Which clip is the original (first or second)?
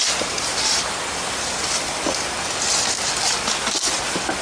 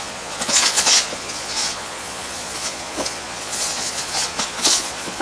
first